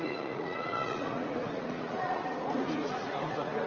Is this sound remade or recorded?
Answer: remade